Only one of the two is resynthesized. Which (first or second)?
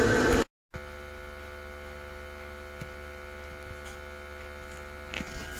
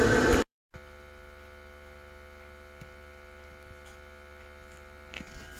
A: second